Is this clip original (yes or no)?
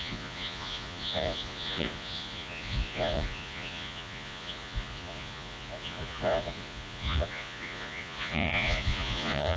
no